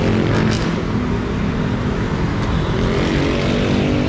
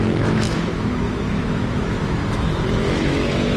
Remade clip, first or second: second